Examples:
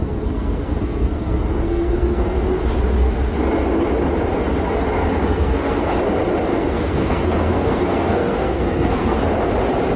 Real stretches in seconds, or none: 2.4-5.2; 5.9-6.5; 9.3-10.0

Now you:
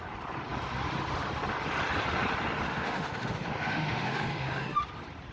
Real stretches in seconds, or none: 0.0-2.7; 4.8-5.3

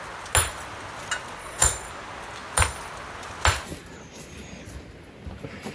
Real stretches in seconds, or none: 0.0-1.4; 1.9-5.7